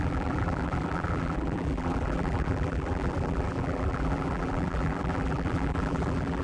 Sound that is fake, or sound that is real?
fake